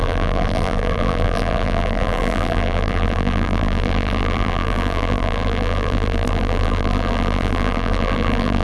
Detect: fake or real fake